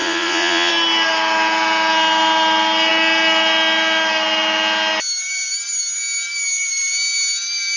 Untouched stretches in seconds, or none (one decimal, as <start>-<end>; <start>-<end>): 0.7-7.8